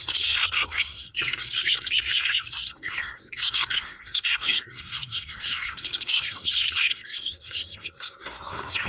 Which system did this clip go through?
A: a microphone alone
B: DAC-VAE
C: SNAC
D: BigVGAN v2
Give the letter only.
C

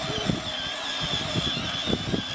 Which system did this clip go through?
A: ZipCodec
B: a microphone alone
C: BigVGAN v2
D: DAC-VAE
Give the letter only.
B